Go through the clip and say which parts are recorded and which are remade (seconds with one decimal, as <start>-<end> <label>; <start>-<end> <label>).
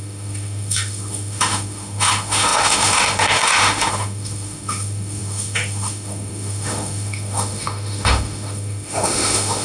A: 0.0-9.6 remade